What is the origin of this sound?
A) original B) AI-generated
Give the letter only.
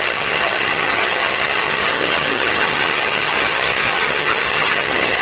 B